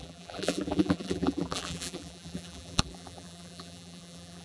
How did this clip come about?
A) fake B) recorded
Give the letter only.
A